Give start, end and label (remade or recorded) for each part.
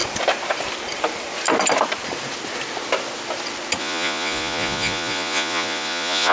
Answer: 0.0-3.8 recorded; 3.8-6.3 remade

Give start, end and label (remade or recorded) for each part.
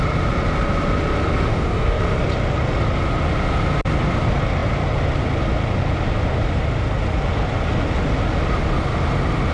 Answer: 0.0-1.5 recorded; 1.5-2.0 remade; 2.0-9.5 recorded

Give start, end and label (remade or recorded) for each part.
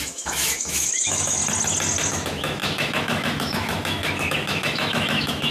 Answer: 0.0-1.4 remade; 1.4-2.1 recorded; 2.1-5.5 remade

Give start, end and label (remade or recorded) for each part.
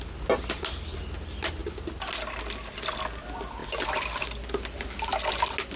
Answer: 0.0-1.6 recorded; 1.6-2.1 remade; 2.1-5.8 recorded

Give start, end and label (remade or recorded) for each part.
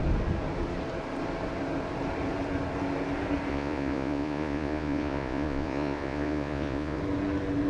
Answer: 0.0-3.5 recorded; 3.5-7.0 remade; 7.0-7.7 recorded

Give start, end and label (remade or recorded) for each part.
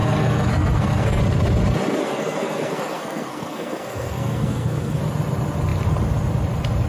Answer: 0.0-1.2 remade; 1.2-2.0 recorded; 2.0-5.0 remade; 5.0-6.9 recorded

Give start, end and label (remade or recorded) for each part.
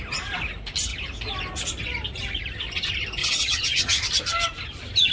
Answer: 0.0-3.2 recorded; 3.2-4.1 remade; 4.1-5.1 recorded